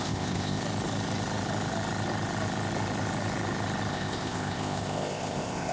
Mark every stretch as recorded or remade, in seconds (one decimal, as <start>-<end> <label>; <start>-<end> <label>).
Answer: 0.0-0.6 remade; 0.6-3.9 recorded; 3.9-5.7 remade